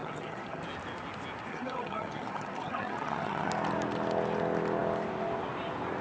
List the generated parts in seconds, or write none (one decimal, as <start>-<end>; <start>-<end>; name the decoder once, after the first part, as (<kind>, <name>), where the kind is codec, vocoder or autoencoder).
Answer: 0.0-0.6 (vocoder, HiFi-GAN); 1.5-3.5